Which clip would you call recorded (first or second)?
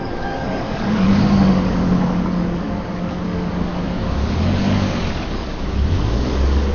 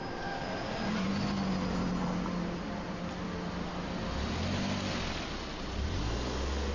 second